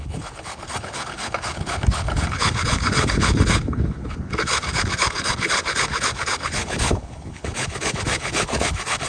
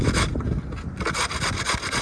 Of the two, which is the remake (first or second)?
first